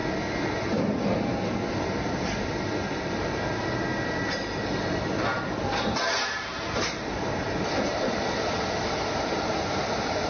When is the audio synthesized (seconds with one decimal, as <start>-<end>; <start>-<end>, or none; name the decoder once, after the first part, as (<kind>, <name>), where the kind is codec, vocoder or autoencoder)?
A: 1.7-10.3 (vocoder, BigVGAN v2)